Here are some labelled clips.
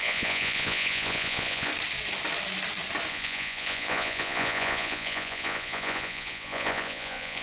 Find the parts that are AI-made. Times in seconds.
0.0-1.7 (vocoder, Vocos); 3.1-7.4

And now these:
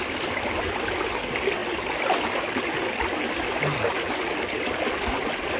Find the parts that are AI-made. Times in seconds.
none

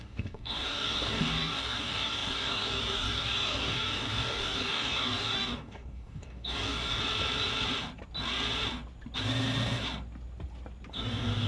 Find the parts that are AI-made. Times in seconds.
0.0-7.0 (codec, DAC); 10.9-11.5

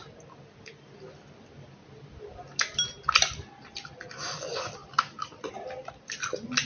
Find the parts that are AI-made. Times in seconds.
none